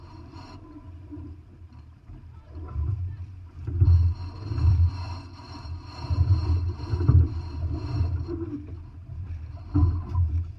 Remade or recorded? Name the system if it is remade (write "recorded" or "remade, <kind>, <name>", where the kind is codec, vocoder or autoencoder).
remade, vocoder, BigVGAN v2